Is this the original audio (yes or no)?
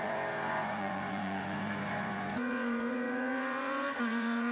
no